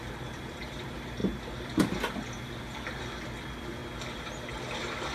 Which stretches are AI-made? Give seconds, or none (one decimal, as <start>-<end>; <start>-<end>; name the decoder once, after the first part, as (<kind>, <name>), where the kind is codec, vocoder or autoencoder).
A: 0.0-1.2 (vocoder, BigVGAN v2); 2.6-3.8; 4.6-5.1